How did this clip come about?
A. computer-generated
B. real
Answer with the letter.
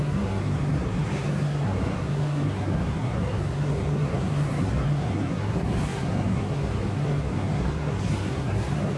A